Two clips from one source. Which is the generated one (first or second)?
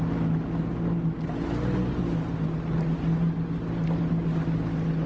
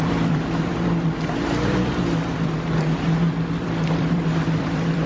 second